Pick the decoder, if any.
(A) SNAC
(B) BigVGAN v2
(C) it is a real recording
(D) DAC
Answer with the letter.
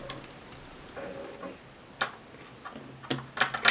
C